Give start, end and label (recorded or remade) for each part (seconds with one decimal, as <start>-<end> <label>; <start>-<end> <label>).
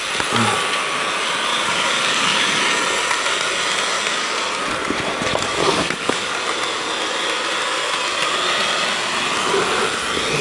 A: 0.0-1.5 recorded; 1.5-2.6 remade; 2.6-5.6 recorded; 5.6-6.3 remade; 6.3-10.4 recorded